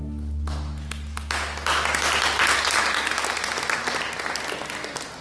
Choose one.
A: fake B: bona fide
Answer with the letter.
B